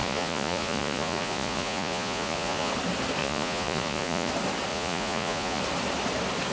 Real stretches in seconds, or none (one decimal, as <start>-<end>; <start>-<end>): 2.7-3.2; 4.3-4.7; 5.6-6.5